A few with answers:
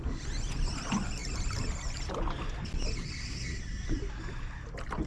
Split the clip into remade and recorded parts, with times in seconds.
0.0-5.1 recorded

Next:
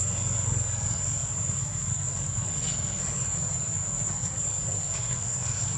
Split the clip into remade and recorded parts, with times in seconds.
0.0-5.8 remade

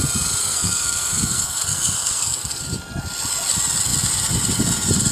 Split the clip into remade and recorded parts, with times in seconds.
0.0-0.4 recorded; 0.4-2.6 remade; 2.6-5.1 recorded

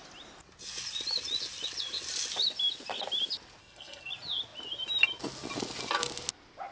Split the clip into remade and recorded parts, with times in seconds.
0.0-3.6 recorded; 3.6-4.1 remade; 4.1-6.7 recorded

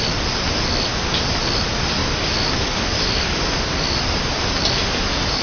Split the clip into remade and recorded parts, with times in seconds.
0.0-5.4 recorded

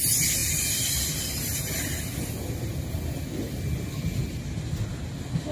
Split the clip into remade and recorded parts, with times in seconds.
0.0-5.5 recorded

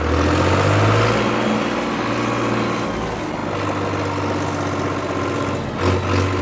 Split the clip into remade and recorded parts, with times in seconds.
0.0-6.4 recorded

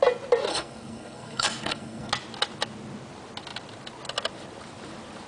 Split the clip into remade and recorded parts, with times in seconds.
0.0-0.5 recorded; 0.5-2.1 remade; 2.1-5.3 recorded